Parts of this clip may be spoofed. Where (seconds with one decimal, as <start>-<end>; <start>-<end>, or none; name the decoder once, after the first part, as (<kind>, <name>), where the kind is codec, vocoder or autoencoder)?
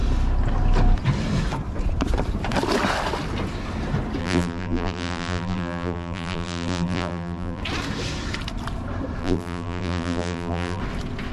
4.2-7.6 (vocoder, BigVGAN v2); 9.2-10.8